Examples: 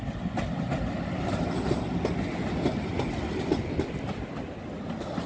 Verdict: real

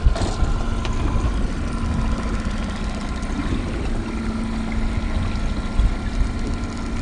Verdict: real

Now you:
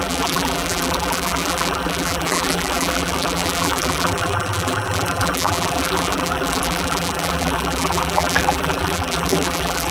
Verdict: fake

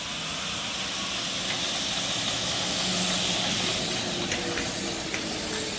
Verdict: real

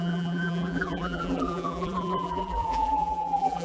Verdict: fake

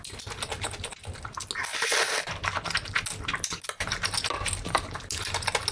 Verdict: real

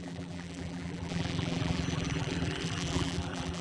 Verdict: fake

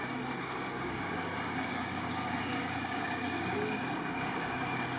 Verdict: fake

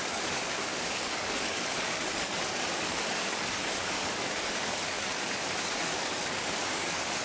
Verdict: fake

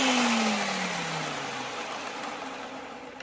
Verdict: real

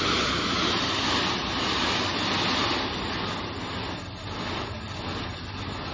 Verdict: real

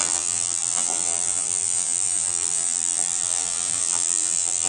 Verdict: fake